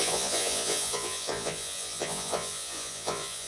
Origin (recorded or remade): remade